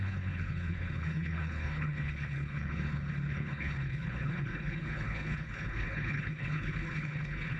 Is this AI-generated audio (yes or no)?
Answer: yes